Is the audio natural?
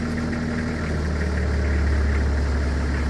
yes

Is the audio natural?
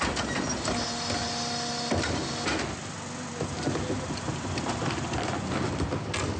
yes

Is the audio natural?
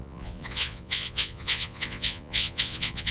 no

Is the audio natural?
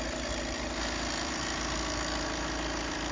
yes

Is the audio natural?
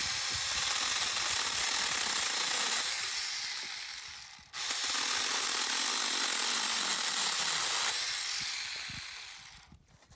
yes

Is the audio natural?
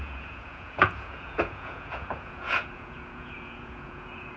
no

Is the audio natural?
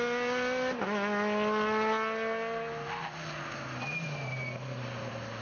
yes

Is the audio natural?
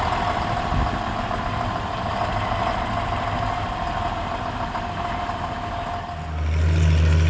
yes